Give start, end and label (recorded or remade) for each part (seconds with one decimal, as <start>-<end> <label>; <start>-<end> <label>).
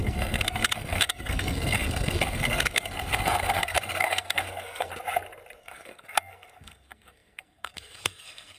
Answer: 0.0-4.9 remade; 4.9-5.6 recorded; 5.6-8.6 remade